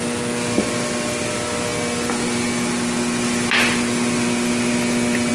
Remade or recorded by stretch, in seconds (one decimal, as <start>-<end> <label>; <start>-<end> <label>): 0.0-5.3 recorded

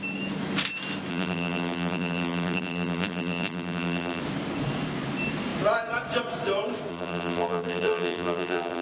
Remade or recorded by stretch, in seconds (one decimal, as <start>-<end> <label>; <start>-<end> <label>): 0.0-1.1 recorded; 1.1-4.2 remade; 4.2-6.9 recorded; 6.9-8.8 remade

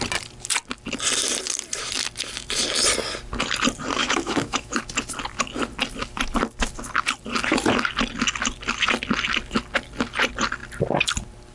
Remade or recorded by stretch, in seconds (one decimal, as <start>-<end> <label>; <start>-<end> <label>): 0.0-4.0 recorded; 4.0-4.8 remade; 4.8-11.5 recorded

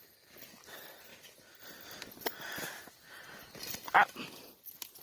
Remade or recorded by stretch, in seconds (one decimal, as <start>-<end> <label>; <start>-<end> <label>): 0.0-5.0 recorded